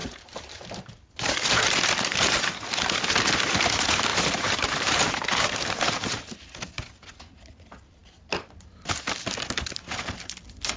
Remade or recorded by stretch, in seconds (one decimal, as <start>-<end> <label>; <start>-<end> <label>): 0.0-0.7 remade; 0.7-4.1 recorded; 4.1-6.5 remade; 6.5-10.8 recorded

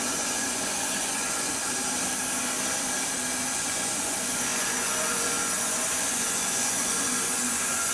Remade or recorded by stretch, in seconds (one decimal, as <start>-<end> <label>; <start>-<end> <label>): 0.0-1.6 remade; 1.6-3.5 recorded; 3.5-7.9 remade

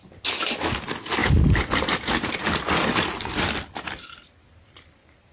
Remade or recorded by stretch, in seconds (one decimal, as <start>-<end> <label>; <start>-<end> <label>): 0.0-5.3 recorded

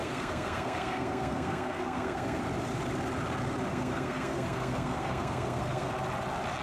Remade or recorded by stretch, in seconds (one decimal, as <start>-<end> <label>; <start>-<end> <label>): 0.0-2.4 remade; 2.4-3.7 recorded; 3.7-5.9 remade; 5.9-6.6 recorded

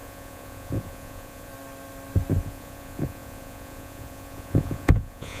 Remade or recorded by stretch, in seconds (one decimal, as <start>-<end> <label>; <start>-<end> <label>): 0.0-1.5 remade; 1.5-2.4 recorded; 2.4-5.4 remade

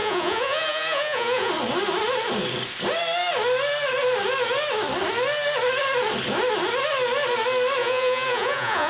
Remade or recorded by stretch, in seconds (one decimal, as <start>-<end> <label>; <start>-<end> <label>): 0.0-1.5 remade; 1.5-7.8 recorded; 7.8-8.9 remade

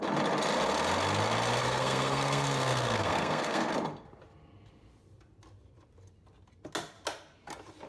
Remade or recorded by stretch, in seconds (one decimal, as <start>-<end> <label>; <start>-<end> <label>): 0.0-1.6 recorded; 1.6-3.7 remade; 3.7-7.9 recorded